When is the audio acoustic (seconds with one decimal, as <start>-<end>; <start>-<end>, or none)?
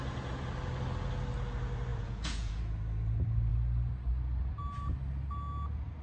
0.0-1.9; 2.6-6.0